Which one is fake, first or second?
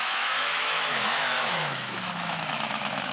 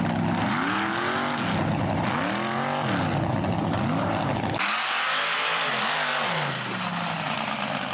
first